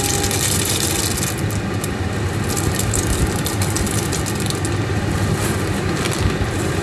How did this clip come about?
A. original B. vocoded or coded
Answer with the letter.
A